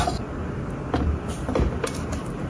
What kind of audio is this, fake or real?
real